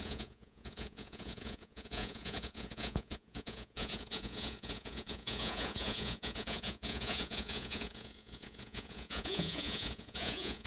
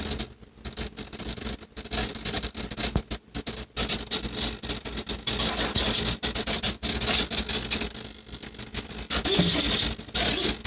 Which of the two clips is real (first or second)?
second